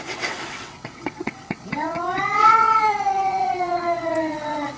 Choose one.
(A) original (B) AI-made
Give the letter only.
B